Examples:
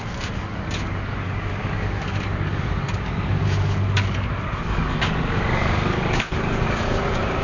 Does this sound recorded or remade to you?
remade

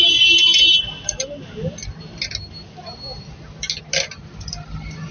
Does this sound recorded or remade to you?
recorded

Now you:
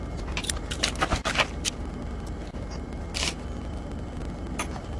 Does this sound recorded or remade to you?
remade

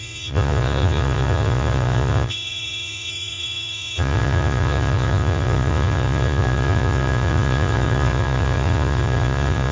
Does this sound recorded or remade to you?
remade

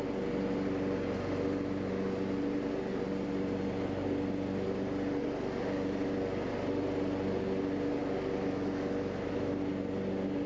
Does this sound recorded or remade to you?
recorded